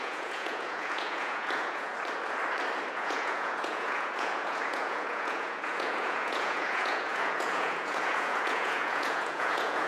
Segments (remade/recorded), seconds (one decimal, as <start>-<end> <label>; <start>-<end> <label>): 0.0-1.9 remade; 1.9-2.9 recorded; 2.9-9.9 remade